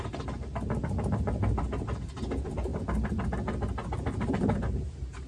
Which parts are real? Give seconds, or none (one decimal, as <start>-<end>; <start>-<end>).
2.7-4.3